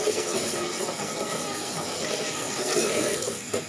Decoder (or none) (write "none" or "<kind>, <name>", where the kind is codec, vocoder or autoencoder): codec, SNAC